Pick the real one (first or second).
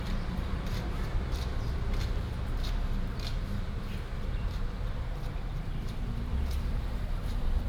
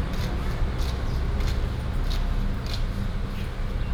second